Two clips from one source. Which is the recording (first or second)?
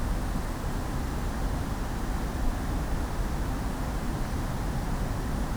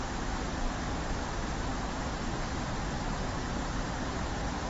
first